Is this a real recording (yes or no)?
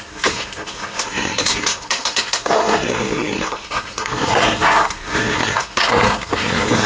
no